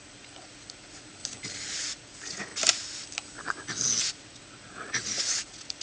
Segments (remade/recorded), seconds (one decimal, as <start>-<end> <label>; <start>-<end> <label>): 0.0-1.2 remade; 1.2-1.7 recorded; 1.7-2.5 remade; 2.5-4.0 recorded; 4.0-5.8 remade